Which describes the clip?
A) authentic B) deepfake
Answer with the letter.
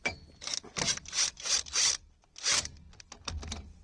A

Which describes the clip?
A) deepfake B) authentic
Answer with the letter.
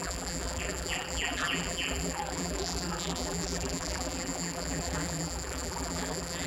A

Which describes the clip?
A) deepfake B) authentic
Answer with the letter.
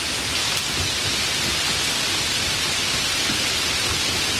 B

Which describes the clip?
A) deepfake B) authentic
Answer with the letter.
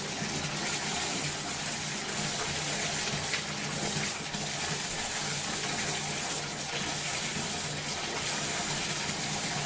B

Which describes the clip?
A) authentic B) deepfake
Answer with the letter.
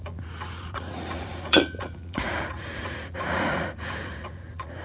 B